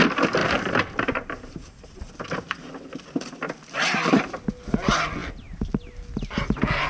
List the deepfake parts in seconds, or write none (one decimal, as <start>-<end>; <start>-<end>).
0.4-2.1